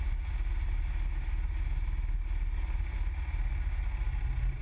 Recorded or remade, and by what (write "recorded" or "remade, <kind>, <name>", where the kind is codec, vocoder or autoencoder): recorded